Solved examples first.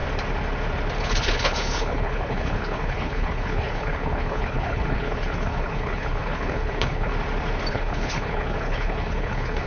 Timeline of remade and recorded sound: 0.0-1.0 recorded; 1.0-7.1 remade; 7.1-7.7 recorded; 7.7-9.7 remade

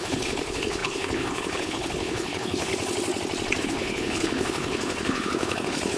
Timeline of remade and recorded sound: 0.0-2.7 remade; 2.7-3.6 recorded; 3.6-6.0 remade

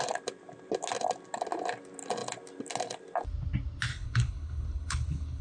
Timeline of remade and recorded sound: 0.0-3.9 recorded; 3.9-5.4 remade

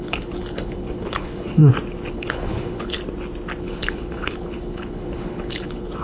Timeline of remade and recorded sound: 0.0-1.6 remade; 1.6-2.1 recorded; 2.1-3.0 remade; 3.0-3.6 recorded; 3.6-6.0 remade